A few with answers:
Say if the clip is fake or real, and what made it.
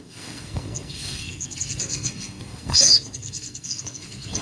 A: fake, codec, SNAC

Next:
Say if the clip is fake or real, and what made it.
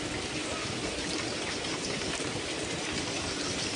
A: real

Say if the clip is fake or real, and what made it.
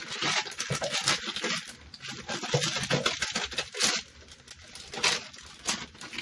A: real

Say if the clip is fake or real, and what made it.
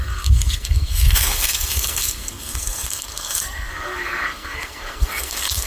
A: fake, codec, SNAC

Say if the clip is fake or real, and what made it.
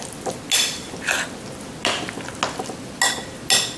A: real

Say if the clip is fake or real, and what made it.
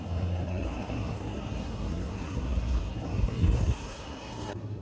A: fake, codec, SNAC